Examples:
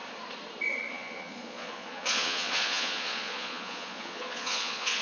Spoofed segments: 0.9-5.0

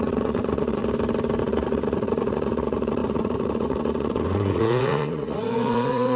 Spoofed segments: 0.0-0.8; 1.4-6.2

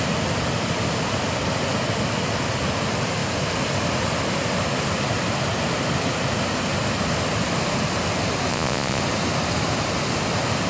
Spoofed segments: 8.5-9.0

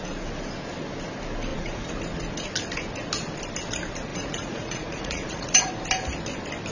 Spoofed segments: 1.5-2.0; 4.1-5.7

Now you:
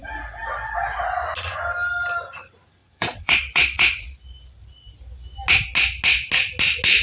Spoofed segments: 2.8-4.2

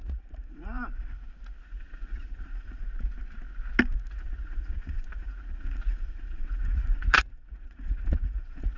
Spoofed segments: 0.0-0.7; 1.6-2.8; 4.1-8.8

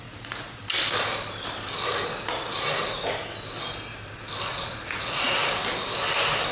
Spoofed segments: 0.0-0.6; 4.5-5.4